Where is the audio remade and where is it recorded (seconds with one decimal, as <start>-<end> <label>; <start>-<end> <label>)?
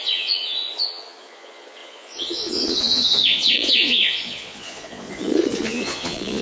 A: 0.0-6.4 remade